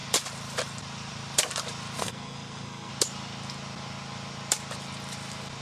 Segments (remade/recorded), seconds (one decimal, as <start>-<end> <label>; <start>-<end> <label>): 0.0-2.0 recorded; 2.0-2.9 remade; 2.9-5.6 recorded